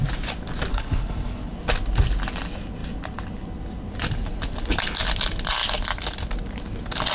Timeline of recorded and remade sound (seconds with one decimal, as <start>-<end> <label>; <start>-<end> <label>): 0.0-0.7 recorded; 0.7-1.5 remade; 1.5-7.1 recorded